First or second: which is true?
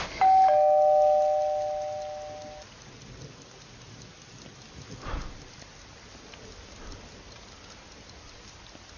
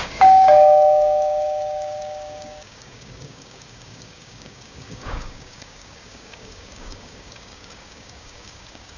first